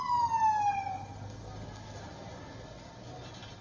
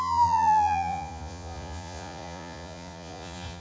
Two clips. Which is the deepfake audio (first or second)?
second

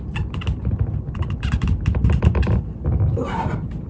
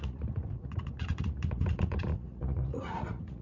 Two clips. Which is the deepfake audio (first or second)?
second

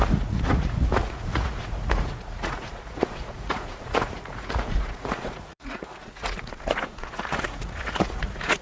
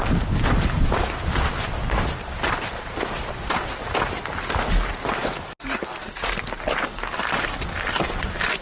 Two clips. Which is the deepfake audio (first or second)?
first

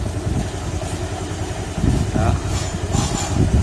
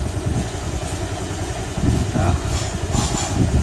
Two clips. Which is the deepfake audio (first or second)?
second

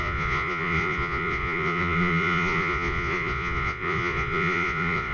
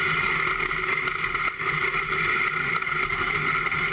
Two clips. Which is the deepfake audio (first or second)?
first